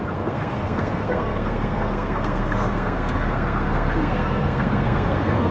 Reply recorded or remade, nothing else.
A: remade